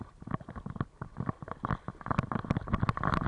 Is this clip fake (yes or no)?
no